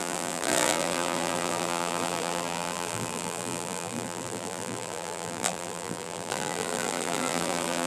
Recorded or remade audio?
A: remade